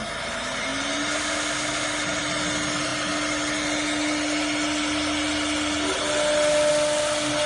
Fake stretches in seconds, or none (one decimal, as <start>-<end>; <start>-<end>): none